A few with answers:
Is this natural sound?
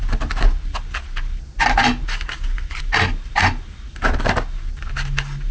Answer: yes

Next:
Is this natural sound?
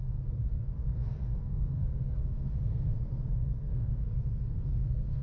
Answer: no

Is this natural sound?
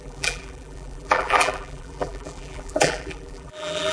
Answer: no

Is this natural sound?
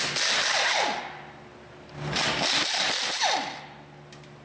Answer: yes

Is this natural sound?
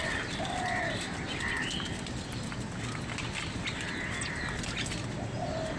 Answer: yes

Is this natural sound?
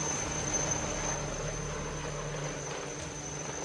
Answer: yes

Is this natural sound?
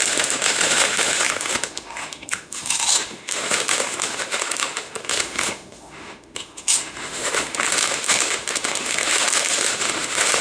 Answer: no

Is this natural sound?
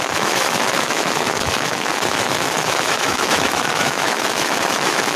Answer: no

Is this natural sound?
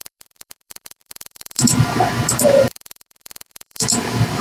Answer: no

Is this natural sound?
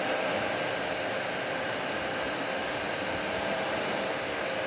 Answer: yes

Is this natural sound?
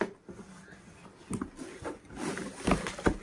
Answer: yes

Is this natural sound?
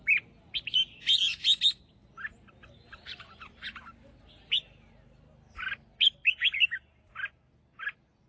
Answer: yes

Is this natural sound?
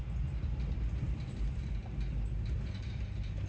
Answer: yes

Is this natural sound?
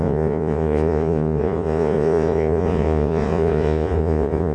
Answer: no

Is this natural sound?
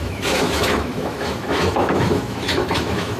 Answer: no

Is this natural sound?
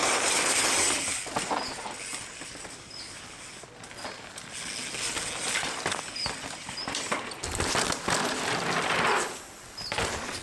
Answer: yes